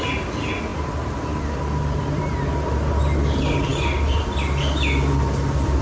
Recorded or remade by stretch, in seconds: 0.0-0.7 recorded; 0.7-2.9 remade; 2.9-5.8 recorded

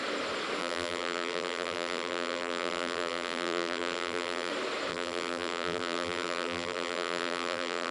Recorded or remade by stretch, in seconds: 0.0-0.6 recorded; 0.6-4.5 remade; 4.5-4.9 recorded; 4.9-7.9 remade

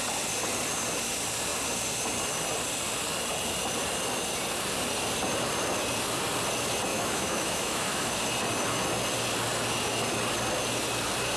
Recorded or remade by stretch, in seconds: 0.0-6.9 recorded; 6.9-8.1 remade; 8.1-11.4 recorded

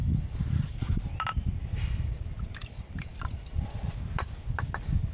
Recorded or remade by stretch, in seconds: 0.0-1.1 remade; 1.1-2.6 recorded; 2.6-4.0 remade; 4.0-5.1 recorded

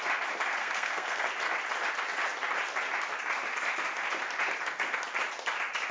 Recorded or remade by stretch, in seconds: 0.0-0.6 recorded; 0.6-1.3 remade; 1.3-5.9 recorded

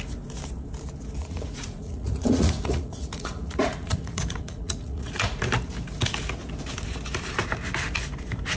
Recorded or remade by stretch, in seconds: 0.0-1.2 recorded; 1.2-5.4 remade; 5.4-8.6 recorded

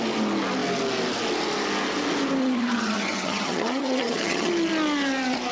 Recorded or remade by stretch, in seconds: 0.0-2.4 recorded; 2.4-4.5 remade; 4.5-5.5 recorded

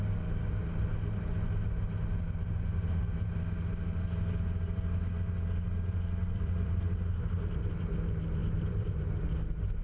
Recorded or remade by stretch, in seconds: 0.0-6.2 recorded; 6.2-7.9 remade; 7.9-8.4 recorded; 8.4-9.0 remade; 9.0-9.8 recorded